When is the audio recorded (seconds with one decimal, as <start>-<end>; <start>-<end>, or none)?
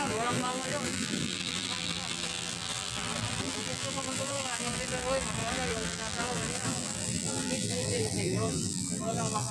none